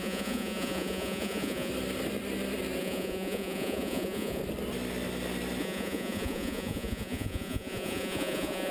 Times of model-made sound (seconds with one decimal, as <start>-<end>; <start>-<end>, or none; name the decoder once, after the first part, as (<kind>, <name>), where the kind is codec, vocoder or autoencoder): 0.0-1.7 (vocoder, Vocos); 2.8-4.4; 5.6-8.7